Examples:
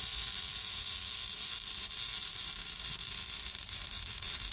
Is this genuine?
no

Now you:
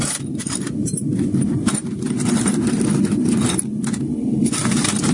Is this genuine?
no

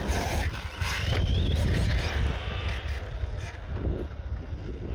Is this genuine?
yes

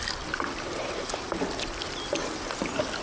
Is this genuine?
yes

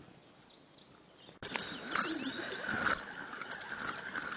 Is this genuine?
yes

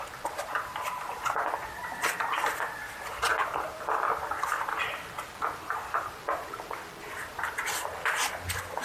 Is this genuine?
yes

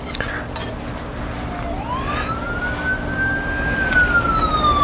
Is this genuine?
yes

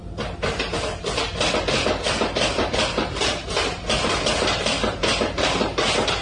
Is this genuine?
yes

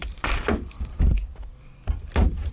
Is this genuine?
no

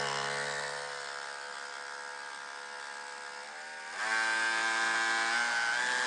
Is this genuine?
yes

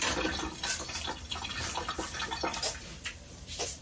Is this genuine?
no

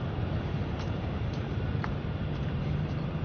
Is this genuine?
no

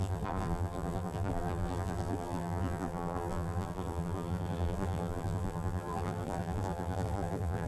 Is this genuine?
no